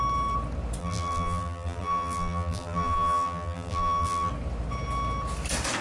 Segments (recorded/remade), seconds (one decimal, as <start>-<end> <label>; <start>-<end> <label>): 0.0-0.8 recorded; 0.8-4.3 remade; 4.3-5.8 recorded